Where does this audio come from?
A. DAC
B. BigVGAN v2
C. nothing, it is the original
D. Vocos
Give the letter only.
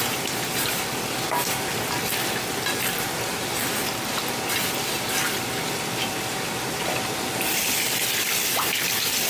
C